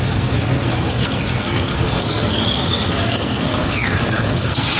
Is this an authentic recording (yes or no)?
no